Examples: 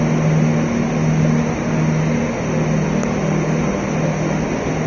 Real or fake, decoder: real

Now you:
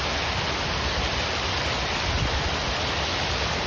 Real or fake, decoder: real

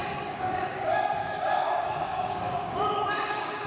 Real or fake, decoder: fake, codec, DAC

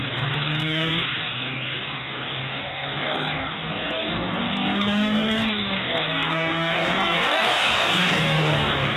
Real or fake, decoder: fake, codec, DAC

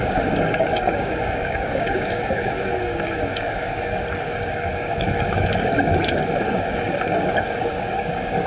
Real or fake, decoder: fake, codec, DAC